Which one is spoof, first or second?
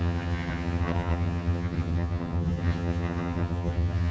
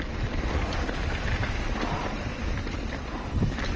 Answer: first